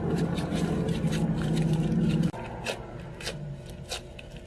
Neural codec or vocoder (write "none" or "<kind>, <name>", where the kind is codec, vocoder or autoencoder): vocoder, BigVGAN v2